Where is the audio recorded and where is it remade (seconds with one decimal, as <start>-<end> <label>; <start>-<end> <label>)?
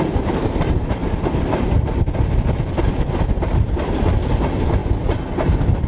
0.0-5.9 recorded